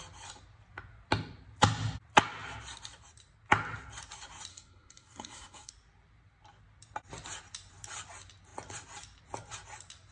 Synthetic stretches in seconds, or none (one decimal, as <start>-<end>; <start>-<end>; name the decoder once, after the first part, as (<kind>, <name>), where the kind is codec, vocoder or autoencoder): 4.5-5.7 (codec, SNAC)